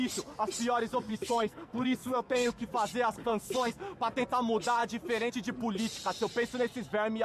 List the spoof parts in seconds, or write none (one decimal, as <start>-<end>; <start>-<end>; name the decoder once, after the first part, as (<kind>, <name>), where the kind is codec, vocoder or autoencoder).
1.1-2.7 (codec, SNAC); 3.2-4.0